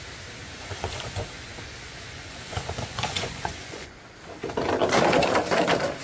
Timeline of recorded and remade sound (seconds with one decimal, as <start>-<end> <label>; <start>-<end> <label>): 0.0-0.4 recorded; 0.4-4.0 remade; 4.0-6.0 recorded